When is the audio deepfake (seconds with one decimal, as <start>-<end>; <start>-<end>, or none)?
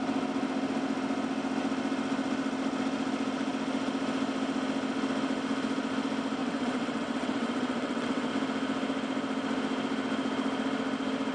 6.4-8.3